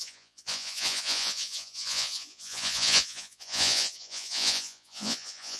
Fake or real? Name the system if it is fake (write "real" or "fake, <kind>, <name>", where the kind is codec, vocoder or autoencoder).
fake, vocoder, Vocos